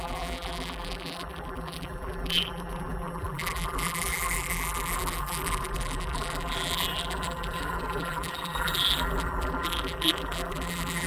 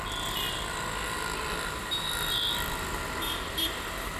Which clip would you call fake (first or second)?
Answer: first